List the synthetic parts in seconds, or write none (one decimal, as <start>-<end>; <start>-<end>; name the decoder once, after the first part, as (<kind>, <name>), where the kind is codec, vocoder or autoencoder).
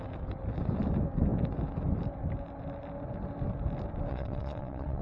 4.1-5.0 (vocoder, WaveNeXt)